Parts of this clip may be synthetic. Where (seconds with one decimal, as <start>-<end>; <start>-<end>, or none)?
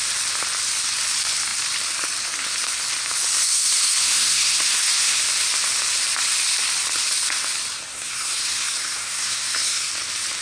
3.4-5.2; 7.9-9.9